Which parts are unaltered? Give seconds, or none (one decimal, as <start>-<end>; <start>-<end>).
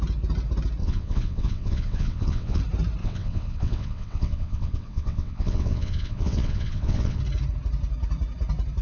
0.0-0.8; 2.6-3.0; 7.2-8.8